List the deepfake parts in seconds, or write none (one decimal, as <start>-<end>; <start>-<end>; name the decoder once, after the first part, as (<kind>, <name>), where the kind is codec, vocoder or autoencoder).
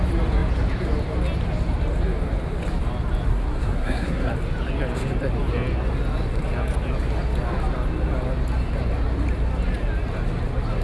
3.3-4.3 (codec, SNAC)